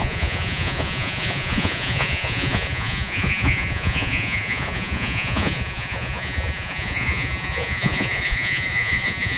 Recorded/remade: remade